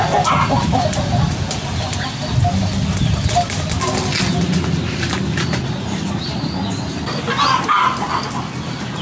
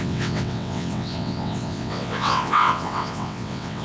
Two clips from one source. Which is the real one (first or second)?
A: first